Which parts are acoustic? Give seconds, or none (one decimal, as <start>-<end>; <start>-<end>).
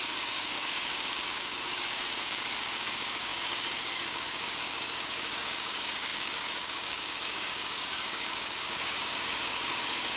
none